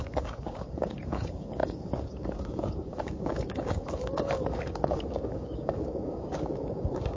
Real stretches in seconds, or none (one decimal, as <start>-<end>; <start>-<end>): none